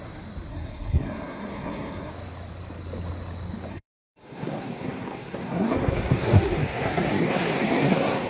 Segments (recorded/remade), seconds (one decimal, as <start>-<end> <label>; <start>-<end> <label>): 0.0-0.5 recorded; 0.5-2.1 remade; 2.1-3.7 recorded; 3.7-8.3 remade